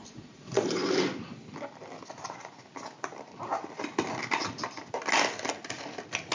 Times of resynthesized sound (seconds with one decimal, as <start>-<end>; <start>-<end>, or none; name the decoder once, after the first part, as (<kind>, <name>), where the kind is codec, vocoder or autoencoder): 0.0-0.9 (vocoder, Vocos)